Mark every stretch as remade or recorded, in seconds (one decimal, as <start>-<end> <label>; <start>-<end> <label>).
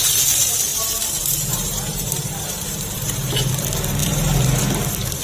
0.0-0.7 recorded; 0.7-3.5 remade; 3.5-4.0 recorded; 4.0-4.6 remade; 4.6-5.2 recorded